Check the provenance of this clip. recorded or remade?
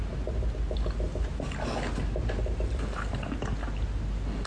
recorded